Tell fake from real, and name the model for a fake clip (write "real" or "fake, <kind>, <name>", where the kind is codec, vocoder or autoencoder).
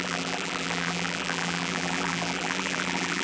fake, vocoder, BigVGAN v2